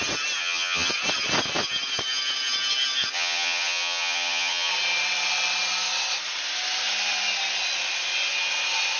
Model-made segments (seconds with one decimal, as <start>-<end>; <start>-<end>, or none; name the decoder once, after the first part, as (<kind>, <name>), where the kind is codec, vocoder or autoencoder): 0.4-0.9 (vocoder, HiFi-GAN); 3.1-4.7

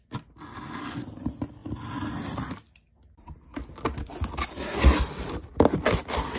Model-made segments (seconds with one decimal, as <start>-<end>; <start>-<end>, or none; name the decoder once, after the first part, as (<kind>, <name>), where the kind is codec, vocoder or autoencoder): none

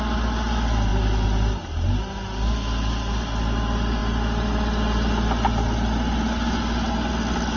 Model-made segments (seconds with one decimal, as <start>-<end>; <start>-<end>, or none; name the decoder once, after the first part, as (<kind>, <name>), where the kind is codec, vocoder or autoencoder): none

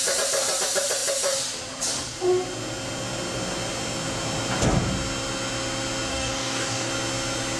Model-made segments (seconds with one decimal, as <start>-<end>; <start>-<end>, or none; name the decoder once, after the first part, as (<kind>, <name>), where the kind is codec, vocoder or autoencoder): 6.1-6.9 (codec, DAC)